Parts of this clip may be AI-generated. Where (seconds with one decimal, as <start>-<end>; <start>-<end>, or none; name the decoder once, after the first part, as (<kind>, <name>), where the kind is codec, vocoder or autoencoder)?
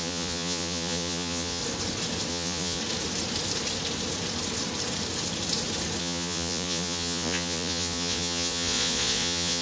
0.0-1.6 (vocoder, Vocos); 2.3-2.8; 6.0-9.6